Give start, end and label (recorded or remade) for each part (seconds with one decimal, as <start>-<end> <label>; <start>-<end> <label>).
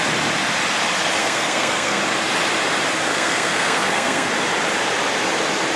0.0-1.2 recorded; 1.2-2.0 remade; 2.0-3.1 recorded; 3.1-4.3 remade; 4.3-5.8 recorded